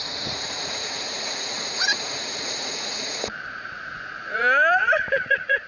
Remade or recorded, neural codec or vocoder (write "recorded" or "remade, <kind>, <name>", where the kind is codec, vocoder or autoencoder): remade, vocoder, Vocos